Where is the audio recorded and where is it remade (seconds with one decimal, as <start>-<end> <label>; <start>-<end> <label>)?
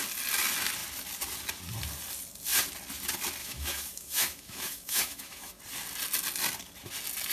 0.0-3.4 recorded; 3.4-5.6 remade; 5.6-7.3 recorded